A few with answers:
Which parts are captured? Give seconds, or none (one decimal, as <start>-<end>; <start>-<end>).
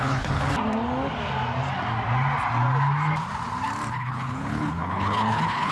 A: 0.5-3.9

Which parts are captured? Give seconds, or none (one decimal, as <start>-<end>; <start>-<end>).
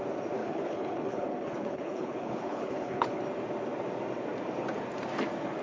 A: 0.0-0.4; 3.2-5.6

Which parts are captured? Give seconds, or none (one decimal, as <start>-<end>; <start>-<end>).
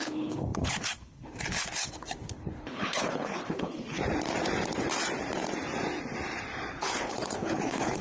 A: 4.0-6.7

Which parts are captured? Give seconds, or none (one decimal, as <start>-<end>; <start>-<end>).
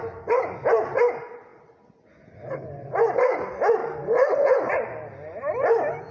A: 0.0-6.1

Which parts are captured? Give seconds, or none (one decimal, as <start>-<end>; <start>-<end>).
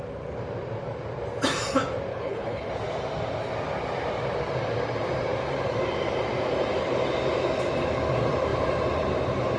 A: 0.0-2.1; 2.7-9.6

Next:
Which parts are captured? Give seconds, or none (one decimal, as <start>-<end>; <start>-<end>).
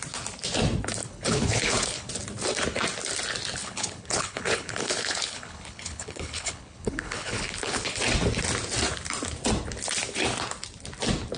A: 0.0-1.0; 2.1-3.6; 8.0-11.4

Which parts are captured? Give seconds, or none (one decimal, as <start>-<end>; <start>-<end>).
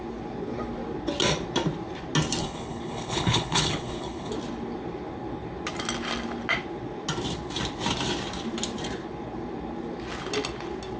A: 0.0-2.4; 4.3-11.0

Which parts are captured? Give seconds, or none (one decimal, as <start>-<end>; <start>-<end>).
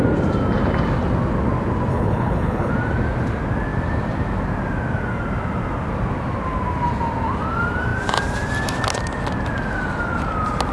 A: 0.0-1.9; 2.7-10.7